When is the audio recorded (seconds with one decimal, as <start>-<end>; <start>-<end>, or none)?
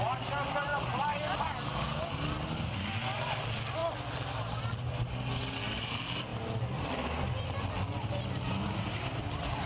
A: 0.0-0.7; 1.4-6.3; 7.0-9.7